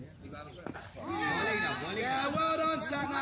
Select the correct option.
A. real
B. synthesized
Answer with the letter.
A